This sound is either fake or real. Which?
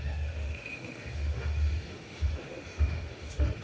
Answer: fake